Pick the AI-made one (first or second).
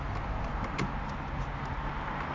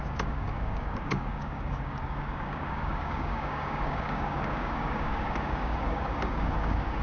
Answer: second